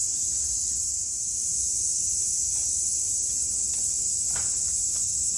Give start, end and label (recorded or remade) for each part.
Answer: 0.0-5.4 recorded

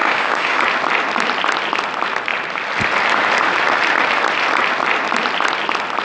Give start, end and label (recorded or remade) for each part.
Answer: 0.0-0.6 remade; 0.6-6.0 recorded

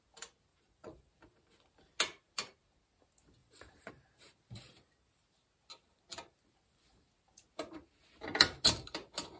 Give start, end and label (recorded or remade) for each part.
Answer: 0.0-0.5 recorded; 0.5-1.1 remade; 1.1-3.4 recorded; 3.4-3.9 remade; 3.9-9.4 recorded

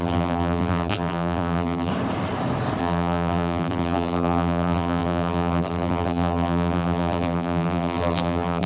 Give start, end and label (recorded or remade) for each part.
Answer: 0.0-1.9 remade; 1.9-2.8 recorded; 2.8-8.7 remade

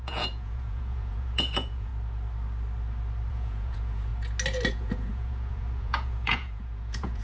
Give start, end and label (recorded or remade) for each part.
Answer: 0.0-1.9 remade; 1.9-3.3 recorded; 3.3-4.1 remade; 4.1-4.7 recorded; 4.7-7.2 remade